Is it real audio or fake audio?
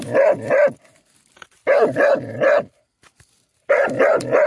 real